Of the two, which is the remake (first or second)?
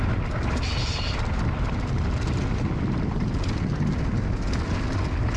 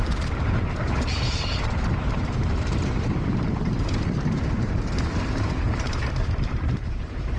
second